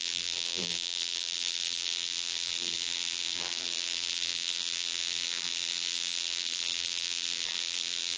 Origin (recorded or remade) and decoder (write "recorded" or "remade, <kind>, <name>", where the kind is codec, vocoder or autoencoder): remade, vocoder, BigVGAN v2